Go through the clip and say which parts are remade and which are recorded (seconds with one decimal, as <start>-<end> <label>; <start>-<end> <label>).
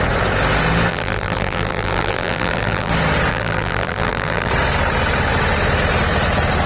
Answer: 0.0-0.9 recorded; 0.9-2.9 remade; 2.9-3.3 recorded; 3.3-4.5 remade; 4.5-6.7 recorded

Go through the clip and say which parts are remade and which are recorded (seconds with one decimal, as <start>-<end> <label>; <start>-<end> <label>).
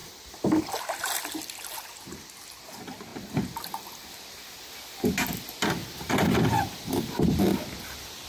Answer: 0.0-2.6 remade; 2.6-5.8 recorded; 5.8-7.4 remade; 7.4-8.3 recorded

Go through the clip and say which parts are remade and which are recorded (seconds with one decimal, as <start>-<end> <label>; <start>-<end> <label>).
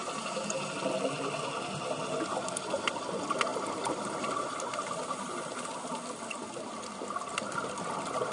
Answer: 0.0-0.5 remade; 0.5-2.3 recorded; 2.3-2.9 remade; 2.9-3.5 recorded; 3.5-5.6 remade; 5.6-8.3 recorded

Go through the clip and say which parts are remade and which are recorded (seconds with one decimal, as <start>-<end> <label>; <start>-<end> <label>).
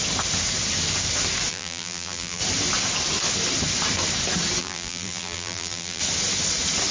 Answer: 0.0-1.5 recorded; 1.5-2.4 remade; 2.4-4.6 recorded; 4.6-6.0 remade; 6.0-6.9 recorded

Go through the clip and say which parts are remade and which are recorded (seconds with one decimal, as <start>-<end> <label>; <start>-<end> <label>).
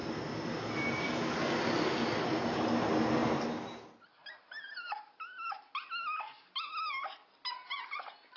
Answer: 0.0-8.4 recorded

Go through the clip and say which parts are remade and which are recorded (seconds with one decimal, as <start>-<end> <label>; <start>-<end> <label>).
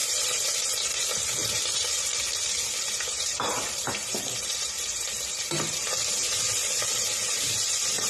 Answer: 0.0-0.7 remade; 0.7-1.4 recorded; 1.4-5.9 remade; 5.9-8.1 recorded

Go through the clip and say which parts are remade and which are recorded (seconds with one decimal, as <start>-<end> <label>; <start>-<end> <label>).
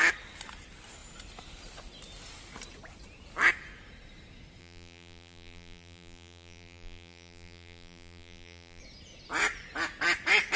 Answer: 0.0-4.6 recorded; 4.6-8.8 remade; 8.8-10.6 recorded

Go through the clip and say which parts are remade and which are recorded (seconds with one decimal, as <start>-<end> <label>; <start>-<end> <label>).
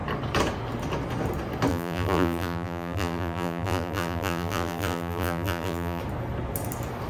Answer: 0.0-1.7 recorded; 1.7-6.0 remade; 6.0-7.1 recorded